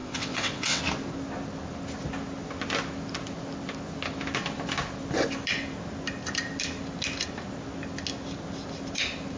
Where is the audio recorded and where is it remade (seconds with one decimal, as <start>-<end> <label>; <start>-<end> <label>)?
0.0-0.8 remade; 0.8-9.4 recorded